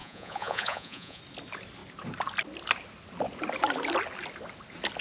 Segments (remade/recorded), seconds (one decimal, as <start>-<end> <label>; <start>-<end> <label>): 0.0-1.2 remade; 1.2-5.0 recorded